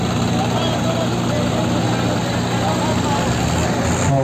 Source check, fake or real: real